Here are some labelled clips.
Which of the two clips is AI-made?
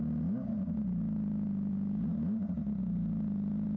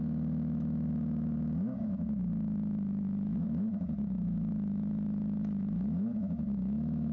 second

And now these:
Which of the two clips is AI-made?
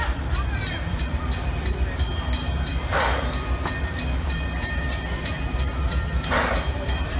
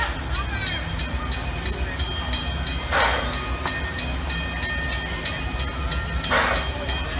first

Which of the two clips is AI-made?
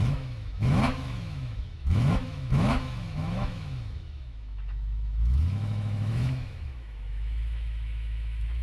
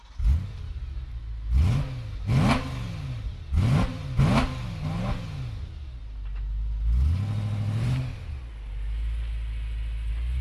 first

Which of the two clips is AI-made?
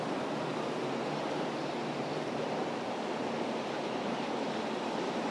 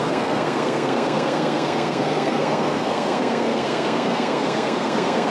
second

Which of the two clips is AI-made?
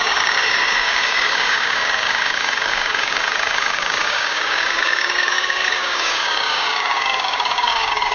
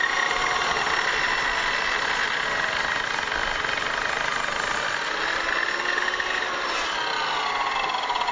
first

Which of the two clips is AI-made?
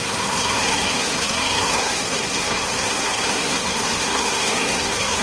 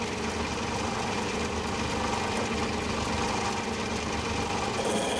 first